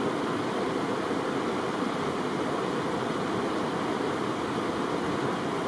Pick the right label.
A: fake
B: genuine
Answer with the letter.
B